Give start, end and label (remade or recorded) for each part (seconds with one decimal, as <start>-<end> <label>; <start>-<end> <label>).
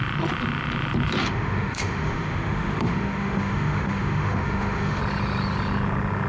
0.0-1.2 recorded; 1.2-5.0 remade; 5.0-6.3 recorded